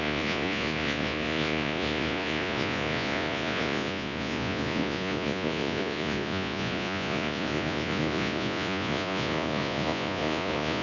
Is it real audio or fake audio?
fake